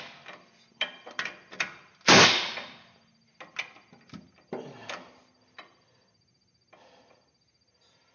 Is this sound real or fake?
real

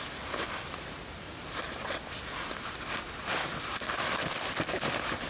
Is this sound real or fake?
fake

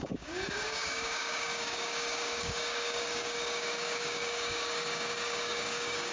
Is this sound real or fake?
fake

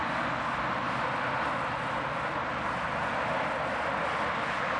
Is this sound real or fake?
real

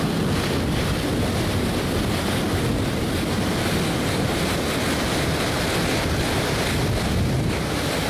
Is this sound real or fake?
real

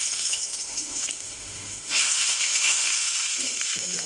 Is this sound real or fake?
fake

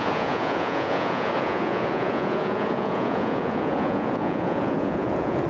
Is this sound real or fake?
fake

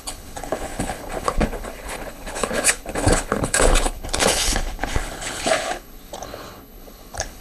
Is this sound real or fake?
fake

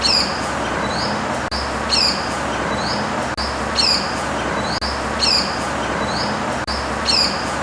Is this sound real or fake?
real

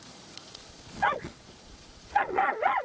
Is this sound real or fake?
fake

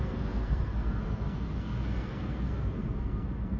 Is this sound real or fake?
fake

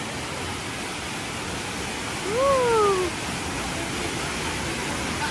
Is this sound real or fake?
real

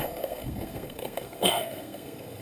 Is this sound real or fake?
fake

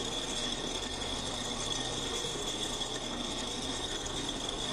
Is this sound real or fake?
fake